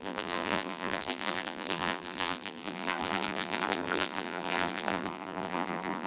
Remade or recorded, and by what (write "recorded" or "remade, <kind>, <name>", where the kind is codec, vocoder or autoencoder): remade, vocoder, BigVGAN v2